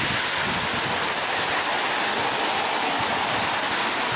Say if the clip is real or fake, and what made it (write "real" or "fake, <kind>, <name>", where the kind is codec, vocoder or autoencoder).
real